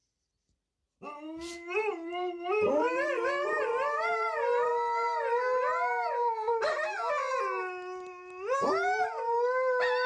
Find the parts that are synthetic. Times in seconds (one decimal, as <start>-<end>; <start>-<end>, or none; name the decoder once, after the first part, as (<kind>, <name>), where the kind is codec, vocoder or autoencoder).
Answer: 0.0-4.7 (vocoder, BigVGAN v2)